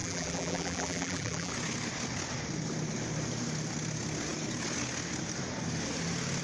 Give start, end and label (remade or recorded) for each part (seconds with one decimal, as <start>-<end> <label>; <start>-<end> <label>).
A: 0.0-1.5 remade; 1.5-6.4 recorded